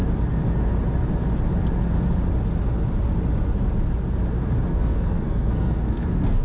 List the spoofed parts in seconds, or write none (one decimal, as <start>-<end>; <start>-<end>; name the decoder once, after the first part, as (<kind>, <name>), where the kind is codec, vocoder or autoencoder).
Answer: 4.7-6.4 (codec, SNAC)